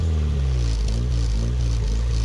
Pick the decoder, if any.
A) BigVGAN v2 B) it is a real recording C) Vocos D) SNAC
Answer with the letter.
B